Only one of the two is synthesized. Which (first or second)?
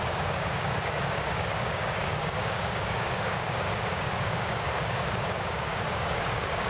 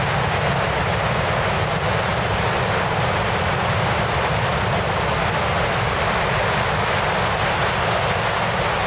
first